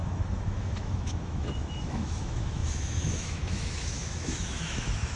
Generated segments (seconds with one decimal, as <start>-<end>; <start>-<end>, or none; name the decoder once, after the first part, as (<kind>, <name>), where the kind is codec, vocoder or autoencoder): 0.0-5.2 (autoencoder, DAC-VAE)